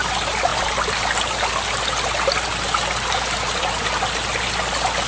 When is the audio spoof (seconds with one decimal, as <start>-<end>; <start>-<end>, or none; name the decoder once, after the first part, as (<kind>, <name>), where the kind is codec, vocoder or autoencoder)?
none